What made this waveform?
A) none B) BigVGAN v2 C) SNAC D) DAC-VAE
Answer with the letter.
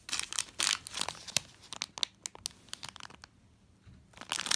A